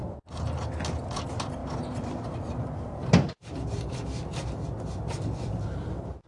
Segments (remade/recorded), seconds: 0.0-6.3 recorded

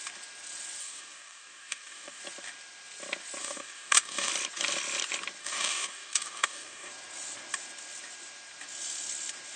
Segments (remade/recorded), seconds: 0.0-0.8 recorded; 0.8-2.2 remade; 2.2-3.4 recorded; 3.4-4.3 remade; 4.3-5.4 recorded; 5.4-6.9 remade; 6.9-9.6 recorded